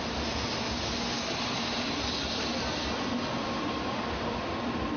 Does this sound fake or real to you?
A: real